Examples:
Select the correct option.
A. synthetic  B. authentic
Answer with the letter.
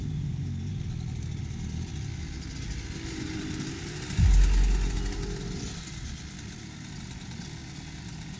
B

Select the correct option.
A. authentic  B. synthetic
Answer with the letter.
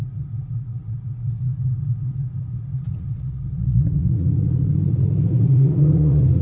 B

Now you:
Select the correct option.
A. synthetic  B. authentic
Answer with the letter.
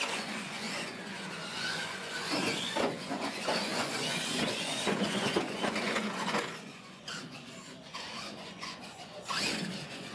A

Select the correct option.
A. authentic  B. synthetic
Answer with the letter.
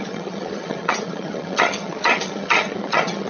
B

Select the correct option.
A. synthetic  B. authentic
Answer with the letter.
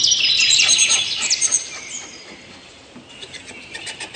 A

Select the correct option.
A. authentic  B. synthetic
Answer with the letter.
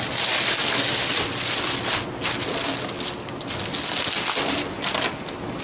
A